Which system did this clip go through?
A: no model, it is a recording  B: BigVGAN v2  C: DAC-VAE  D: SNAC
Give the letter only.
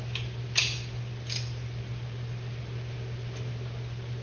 A